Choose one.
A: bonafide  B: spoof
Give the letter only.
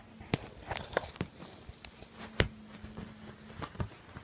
A